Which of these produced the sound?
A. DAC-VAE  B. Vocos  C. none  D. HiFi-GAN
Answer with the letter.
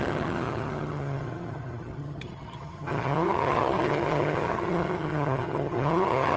D